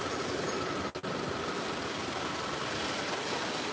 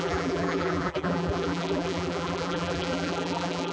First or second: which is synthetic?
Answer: second